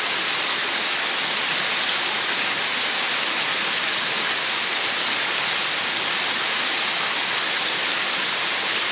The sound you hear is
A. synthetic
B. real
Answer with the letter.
B